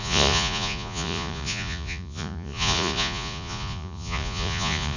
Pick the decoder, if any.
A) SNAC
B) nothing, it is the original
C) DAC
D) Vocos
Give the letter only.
D